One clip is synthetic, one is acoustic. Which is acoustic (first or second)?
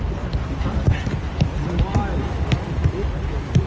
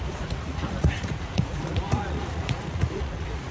first